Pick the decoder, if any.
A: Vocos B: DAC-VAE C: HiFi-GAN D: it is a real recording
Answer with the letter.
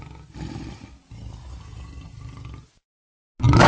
D